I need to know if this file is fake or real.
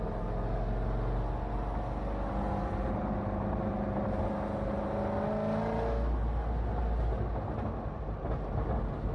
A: real